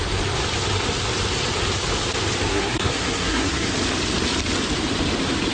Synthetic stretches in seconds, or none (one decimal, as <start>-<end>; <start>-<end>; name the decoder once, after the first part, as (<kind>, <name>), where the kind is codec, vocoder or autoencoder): 2.5-3.7 (codec, SNAC)

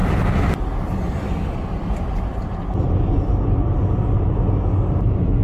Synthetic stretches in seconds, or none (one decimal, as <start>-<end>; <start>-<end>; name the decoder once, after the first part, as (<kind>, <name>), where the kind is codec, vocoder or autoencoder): none

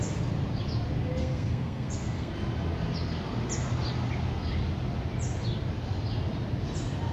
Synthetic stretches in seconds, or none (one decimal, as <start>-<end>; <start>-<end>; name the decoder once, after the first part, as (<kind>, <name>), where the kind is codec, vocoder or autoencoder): 1.2-2.3 (codec, SNAC)

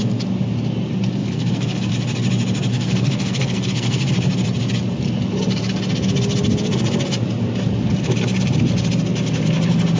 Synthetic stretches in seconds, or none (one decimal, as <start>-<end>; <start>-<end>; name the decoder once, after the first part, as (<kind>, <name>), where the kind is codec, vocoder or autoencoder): 1.2-1.9 (codec, SNAC); 2.7-4.1

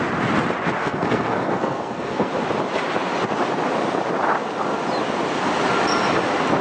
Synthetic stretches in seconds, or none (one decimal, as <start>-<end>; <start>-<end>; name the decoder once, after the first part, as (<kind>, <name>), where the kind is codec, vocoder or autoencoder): 0.8-2.3 (codec, SNAC)